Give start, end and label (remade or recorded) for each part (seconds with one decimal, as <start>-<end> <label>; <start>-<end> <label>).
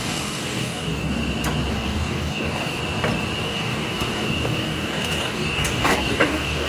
0.0-1.2 remade; 1.2-1.7 recorded; 1.7-2.8 remade; 2.8-3.4 recorded; 3.4-6.7 remade